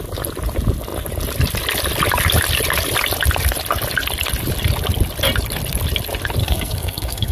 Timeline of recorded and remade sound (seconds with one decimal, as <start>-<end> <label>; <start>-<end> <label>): 0.0-6.4 recorded; 6.4-7.3 remade